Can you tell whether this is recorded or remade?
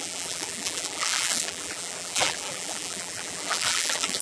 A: remade